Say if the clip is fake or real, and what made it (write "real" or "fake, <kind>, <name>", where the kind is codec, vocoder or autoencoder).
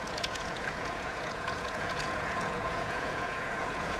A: fake, vocoder, Vocos